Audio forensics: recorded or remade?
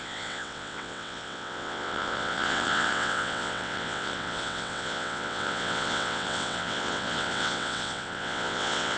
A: remade